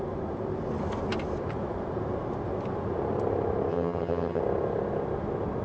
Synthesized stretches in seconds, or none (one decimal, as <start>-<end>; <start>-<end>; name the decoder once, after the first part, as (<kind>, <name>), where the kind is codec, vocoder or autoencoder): 3.7-4.4 (vocoder, HiFi-GAN)